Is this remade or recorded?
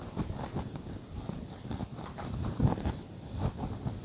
recorded